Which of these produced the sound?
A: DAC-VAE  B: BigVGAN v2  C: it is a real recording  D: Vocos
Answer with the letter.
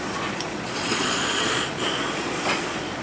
D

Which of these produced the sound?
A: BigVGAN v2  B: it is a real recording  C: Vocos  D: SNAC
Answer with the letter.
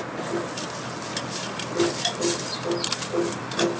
B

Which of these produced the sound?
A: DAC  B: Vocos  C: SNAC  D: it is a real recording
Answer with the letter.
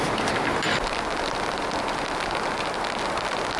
D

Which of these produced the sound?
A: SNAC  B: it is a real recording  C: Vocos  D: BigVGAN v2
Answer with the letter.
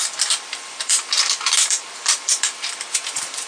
D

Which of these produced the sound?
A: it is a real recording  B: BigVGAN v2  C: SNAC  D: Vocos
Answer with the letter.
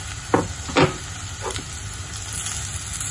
A